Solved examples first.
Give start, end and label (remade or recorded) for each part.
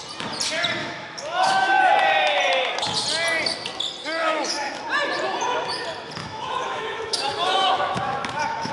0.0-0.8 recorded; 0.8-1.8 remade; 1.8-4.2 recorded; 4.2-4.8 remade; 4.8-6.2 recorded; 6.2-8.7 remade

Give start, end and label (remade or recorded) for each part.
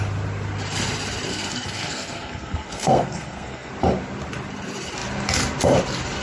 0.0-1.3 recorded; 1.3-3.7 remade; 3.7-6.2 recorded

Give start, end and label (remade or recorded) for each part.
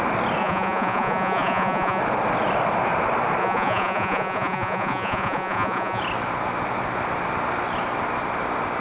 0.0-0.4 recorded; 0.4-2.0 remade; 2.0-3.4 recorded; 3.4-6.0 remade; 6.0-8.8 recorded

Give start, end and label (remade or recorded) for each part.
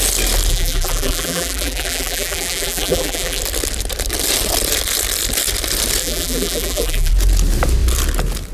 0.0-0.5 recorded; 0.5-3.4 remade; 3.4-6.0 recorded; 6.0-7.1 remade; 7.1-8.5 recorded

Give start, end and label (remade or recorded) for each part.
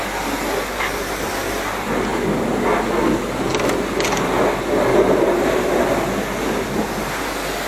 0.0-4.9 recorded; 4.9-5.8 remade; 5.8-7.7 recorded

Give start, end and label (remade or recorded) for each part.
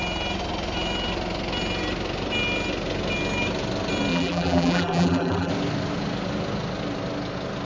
0.0-4.1 recorded; 4.1-5.5 remade; 5.5-7.6 recorded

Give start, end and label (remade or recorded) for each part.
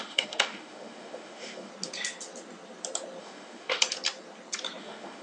0.0-1.7 remade; 1.7-3.2 recorded; 3.2-3.8 remade; 3.8-4.8 recorded; 4.8-5.2 remade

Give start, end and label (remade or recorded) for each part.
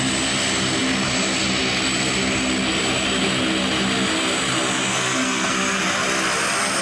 0.0-4.9 recorded; 4.9-5.8 remade; 5.8-6.8 recorded